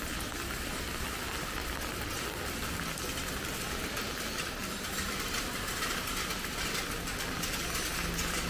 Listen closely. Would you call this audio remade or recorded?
recorded